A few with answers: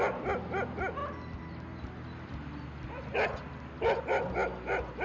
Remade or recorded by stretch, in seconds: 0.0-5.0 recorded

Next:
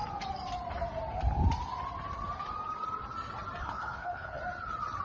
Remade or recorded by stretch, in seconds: 0.0-3.6 recorded; 3.6-4.4 remade; 4.4-5.0 recorded

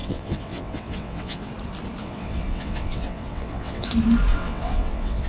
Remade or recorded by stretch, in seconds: 0.0-1.5 remade; 1.5-2.0 recorded; 2.0-3.9 remade; 3.9-4.3 recorded; 4.3-5.3 remade

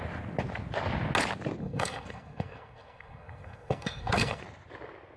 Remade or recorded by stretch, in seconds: 0.0-1.6 recorded; 1.6-4.4 remade; 4.4-5.2 recorded

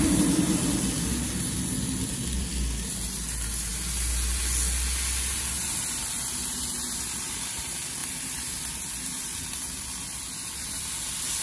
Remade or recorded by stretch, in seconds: 0.0-8.0 recorded; 8.0-10.6 remade; 10.6-11.4 recorded

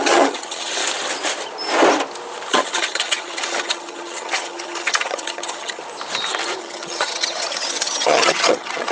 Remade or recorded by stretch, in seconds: 0.0-0.8 remade; 0.8-2.5 recorded; 2.5-5.8 remade; 5.8-6.6 recorded; 6.6-8.9 remade